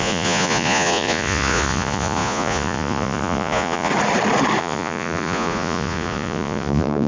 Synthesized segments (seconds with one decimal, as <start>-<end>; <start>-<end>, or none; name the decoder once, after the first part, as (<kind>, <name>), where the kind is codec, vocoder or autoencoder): 0.0-3.9 (vocoder, Vocos); 4.6-7.1